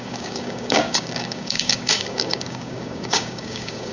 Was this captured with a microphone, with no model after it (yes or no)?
no